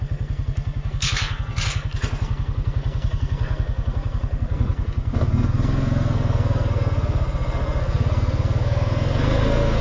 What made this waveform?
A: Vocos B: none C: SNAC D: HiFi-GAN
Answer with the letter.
C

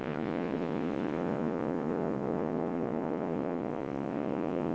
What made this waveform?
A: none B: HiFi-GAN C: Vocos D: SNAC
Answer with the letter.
C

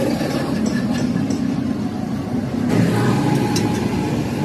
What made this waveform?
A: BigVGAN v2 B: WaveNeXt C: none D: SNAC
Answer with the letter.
C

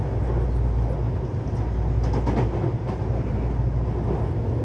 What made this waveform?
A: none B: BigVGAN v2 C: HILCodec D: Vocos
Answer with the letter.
A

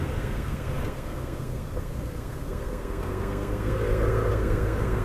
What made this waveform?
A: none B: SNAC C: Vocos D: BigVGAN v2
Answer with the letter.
B